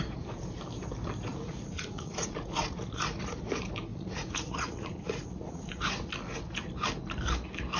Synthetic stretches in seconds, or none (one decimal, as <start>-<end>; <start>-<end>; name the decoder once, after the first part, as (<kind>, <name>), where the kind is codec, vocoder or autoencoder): 1.3-3.4 (vocoder, Vocos); 3.9-6.1